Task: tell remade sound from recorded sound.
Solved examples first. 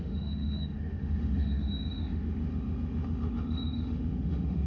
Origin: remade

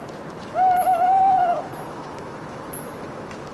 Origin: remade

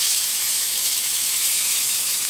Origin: remade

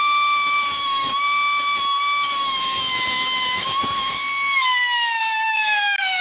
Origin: remade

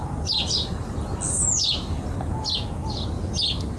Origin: recorded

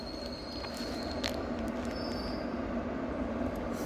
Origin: recorded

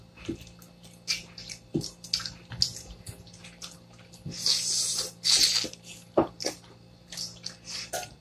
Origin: recorded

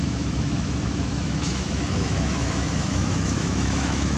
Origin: remade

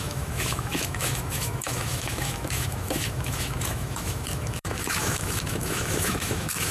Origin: remade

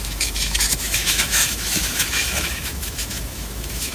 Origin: remade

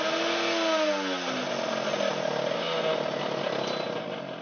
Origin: recorded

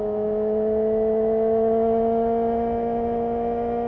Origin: remade